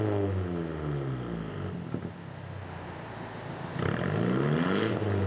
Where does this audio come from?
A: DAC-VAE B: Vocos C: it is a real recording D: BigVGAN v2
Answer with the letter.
C